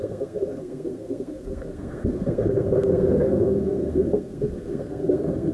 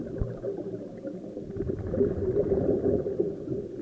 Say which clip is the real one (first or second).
second